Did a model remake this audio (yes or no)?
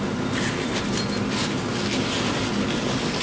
no